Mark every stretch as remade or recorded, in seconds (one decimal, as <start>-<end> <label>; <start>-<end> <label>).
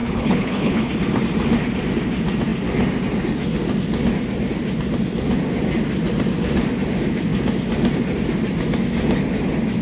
0.0-0.9 remade; 0.9-9.8 recorded